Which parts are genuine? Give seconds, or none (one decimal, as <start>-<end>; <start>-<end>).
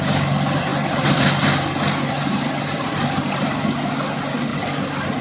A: 0.0-5.2